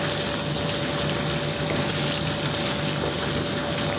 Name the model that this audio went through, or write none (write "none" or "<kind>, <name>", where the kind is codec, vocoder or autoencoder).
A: none